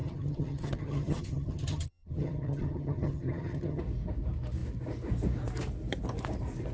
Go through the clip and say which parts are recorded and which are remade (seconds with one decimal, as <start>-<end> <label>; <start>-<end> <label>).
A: 0.0-3.8 remade; 3.8-6.7 recorded